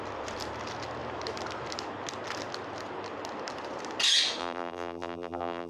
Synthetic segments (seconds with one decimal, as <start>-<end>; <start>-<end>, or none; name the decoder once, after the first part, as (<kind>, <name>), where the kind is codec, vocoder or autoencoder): 4.4-5.7 (vocoder, BigVGAN v2)